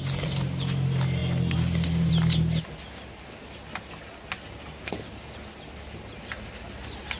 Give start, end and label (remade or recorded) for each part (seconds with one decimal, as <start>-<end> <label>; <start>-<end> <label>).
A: 0.0-7.2 recorded